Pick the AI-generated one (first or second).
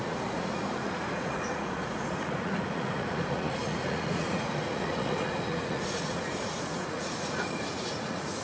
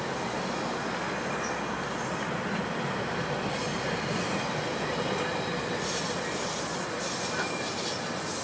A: first